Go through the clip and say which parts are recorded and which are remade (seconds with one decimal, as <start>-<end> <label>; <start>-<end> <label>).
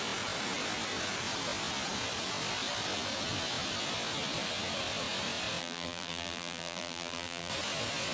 0.0-5.6 recorded; 5.6-7.5 remade; 7.5-8.1 recorded